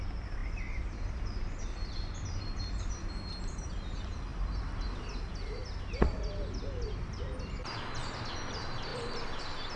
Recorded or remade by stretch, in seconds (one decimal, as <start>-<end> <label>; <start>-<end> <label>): 0.0-9.8 recorded